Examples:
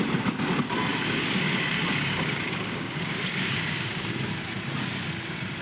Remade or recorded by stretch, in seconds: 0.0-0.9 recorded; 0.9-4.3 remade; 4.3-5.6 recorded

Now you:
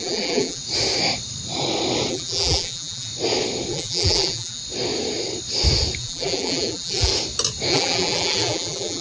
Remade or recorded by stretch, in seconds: 0.0-0.6 remade; 0.6-2.1 recorded; 2.1-3.1 remade; 3.1-3.7 recorded; 3.7-4.6 remade; 4.6-6.0 recorded; 6.0-7.1 remade; 7.1-7.7 recorded; 7.7-9.0 remade